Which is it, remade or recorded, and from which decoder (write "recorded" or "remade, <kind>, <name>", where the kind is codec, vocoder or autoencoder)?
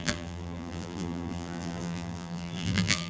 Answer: remade, vocoder, BigVGAN v2